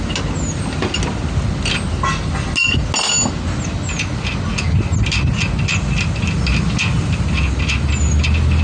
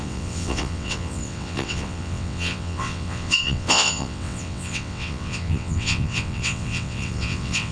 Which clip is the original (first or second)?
first